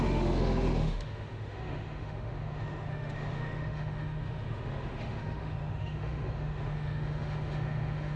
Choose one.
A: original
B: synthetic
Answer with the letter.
B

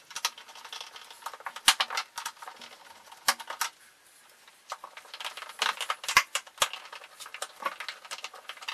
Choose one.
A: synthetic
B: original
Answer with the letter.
B